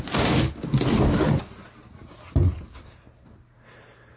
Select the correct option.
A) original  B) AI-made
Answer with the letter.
A